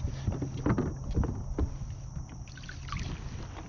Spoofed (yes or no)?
no